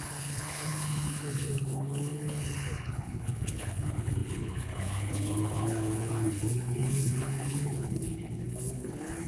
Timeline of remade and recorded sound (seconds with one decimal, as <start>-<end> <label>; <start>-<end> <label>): 0.0-9.3 remade